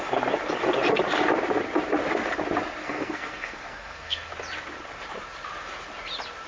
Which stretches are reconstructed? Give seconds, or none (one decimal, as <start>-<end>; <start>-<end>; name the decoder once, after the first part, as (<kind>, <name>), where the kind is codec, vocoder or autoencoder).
2.8-4.3 (codec, SNAC)